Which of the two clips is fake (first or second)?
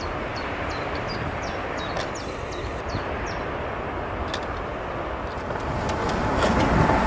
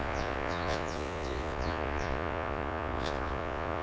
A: second